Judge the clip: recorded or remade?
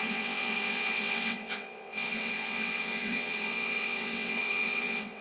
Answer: remade